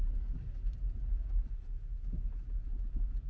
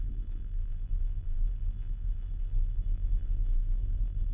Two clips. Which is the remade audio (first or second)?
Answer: second